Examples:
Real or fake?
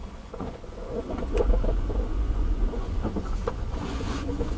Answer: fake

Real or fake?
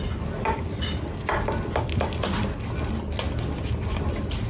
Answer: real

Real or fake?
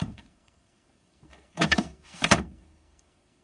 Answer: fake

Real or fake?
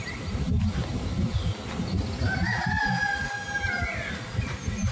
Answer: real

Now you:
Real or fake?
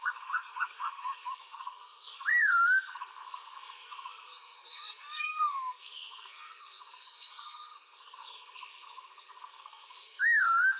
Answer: fake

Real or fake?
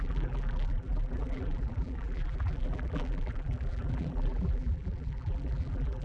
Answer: fake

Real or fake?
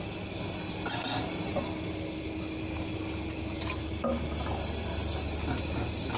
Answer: real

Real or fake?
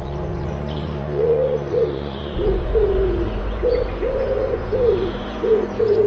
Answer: fake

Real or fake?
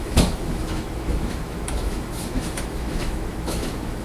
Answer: fake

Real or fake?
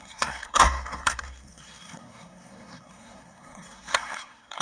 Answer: fake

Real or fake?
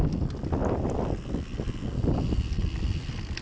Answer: real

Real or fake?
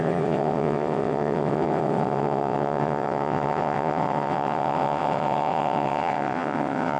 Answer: fake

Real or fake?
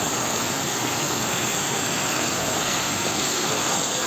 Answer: fake